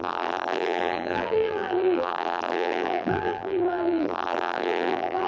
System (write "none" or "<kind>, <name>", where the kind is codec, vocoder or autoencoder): vocoder, BigVGAN v2